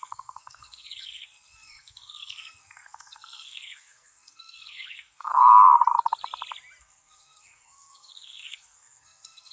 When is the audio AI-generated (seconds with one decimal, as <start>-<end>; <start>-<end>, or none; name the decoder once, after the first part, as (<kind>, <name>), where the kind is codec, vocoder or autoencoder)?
0.0-5.3 (codec, SNAC); 6.8-9.5